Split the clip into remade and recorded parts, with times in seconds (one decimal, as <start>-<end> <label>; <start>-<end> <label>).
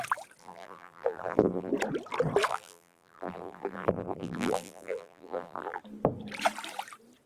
0.0-0.4 recorded; 0.4-1.7 remade; 1.7-2.5 recorded; 2.5-5.8 remade; 5.8-7.3 recorded